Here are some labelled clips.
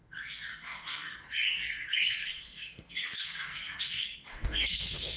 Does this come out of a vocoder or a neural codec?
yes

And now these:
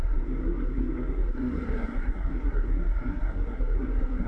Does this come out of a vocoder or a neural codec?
yes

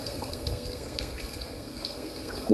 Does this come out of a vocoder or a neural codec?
yes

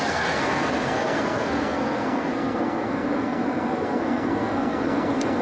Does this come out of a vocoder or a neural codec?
yes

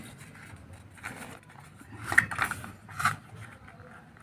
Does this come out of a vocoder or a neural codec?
no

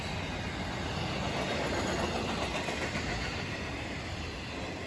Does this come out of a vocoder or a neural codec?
no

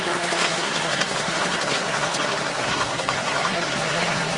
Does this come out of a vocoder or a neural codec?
yes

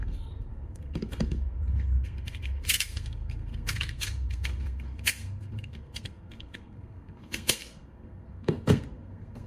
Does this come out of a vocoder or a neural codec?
yes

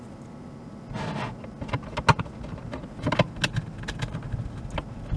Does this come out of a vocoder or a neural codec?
no